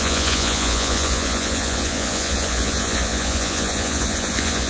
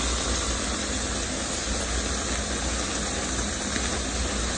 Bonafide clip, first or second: second